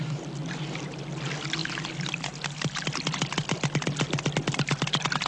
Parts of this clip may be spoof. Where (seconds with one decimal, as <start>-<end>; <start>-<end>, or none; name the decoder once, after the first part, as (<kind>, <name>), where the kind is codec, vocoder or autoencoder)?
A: none